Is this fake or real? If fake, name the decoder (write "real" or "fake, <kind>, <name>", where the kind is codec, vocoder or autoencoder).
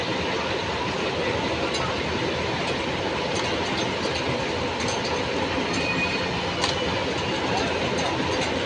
real